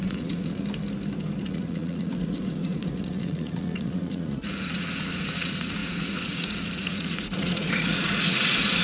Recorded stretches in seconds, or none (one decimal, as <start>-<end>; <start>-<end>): 0.6-1.4